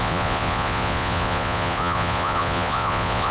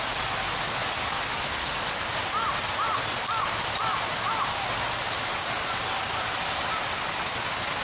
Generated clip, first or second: first